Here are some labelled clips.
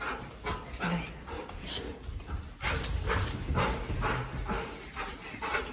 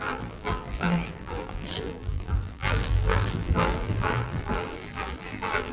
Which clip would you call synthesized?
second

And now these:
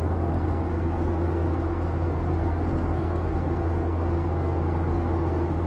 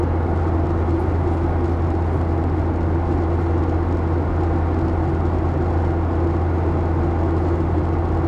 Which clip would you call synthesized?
first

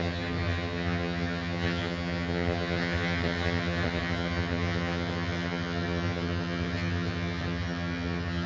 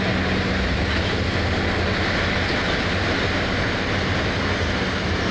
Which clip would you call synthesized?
first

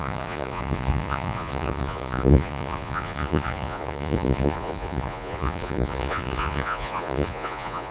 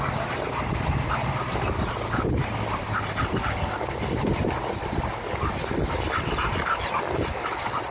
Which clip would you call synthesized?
first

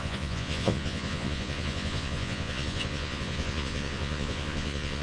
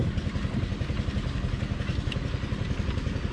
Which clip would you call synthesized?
first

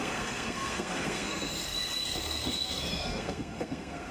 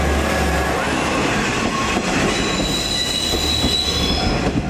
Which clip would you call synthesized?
first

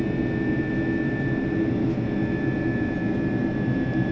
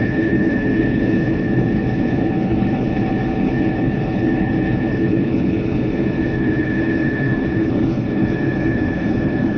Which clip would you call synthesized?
second